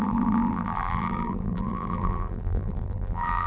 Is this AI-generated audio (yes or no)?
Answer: yes